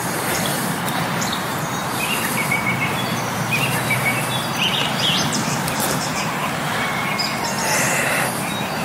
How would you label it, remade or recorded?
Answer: remade